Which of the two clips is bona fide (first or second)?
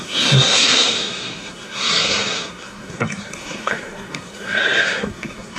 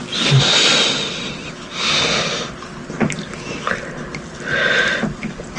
second